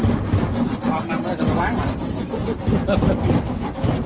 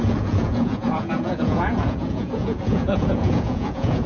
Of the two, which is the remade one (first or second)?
second